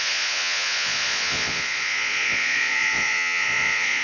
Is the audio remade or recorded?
remade